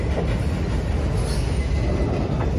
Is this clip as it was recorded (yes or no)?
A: yes